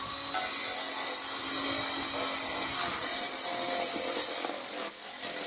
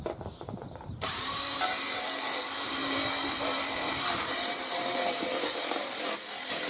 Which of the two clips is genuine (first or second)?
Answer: first